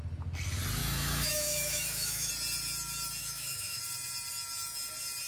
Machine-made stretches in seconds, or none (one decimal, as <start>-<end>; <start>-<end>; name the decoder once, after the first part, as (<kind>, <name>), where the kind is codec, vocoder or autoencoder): 0.8-2.3 (autoencoder, DAC-VAE); 3.2-3.8